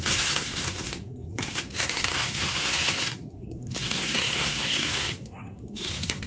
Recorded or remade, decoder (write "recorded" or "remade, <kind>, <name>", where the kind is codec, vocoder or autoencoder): remade, codec, SNAC